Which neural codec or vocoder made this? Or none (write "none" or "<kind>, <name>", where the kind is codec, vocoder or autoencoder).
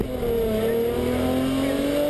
none